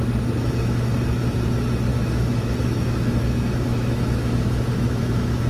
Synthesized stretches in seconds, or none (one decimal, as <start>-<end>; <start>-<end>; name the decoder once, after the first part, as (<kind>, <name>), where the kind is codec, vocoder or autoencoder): 1.9-5.5 (autoencoder, DAC-VAE)